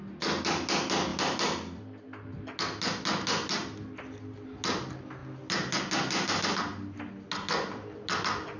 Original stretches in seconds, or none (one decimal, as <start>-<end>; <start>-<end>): 0.0-8.6